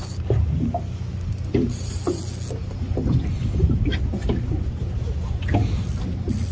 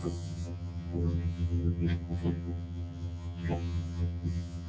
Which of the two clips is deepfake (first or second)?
second